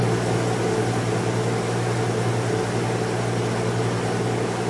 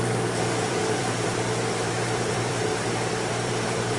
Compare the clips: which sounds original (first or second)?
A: first